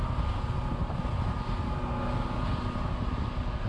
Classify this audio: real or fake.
real